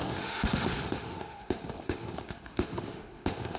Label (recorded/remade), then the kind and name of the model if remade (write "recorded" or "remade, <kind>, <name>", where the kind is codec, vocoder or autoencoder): remade, autoencoder, DAC-VAE